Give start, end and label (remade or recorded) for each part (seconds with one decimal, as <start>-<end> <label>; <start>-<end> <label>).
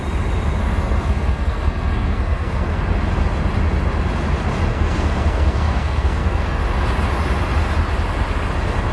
0.0-0.6 recorded; 0.6-2.8 remade; 2.8-4.7 recorded; 4.7-6.6 remade; 6.6-8.9 recorded